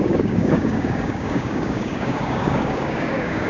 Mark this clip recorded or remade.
remade